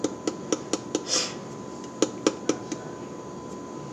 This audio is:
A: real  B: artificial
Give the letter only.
A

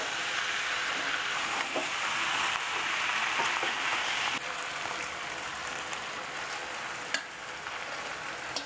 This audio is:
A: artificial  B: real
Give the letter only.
A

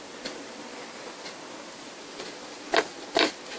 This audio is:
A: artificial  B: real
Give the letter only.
B